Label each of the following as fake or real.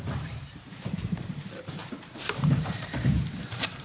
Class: fake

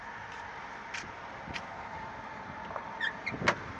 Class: real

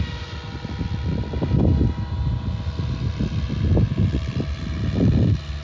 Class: real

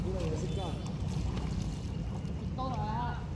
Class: real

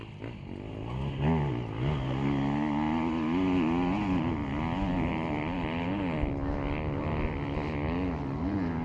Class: real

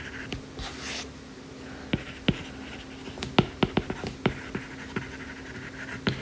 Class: real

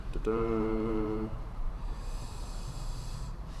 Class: fake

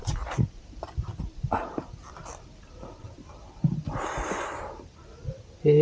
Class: fake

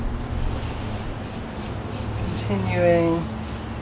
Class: real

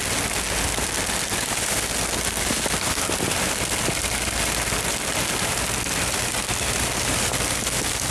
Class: real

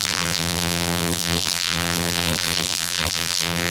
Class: fake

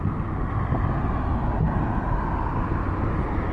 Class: real